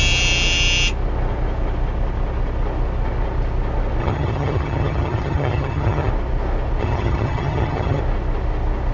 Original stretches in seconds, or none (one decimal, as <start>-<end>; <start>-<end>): 0.0-4.0; 6.1-6.8; 8.0-8.9